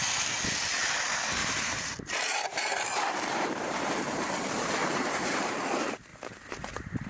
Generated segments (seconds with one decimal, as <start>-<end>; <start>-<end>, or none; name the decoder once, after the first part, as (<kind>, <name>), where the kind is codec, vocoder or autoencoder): 1.4-4.3 (vocoder, BigVGAN v2); 4.8-5.5; 6.1-7.1